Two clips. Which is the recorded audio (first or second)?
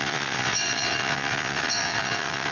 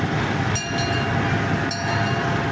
second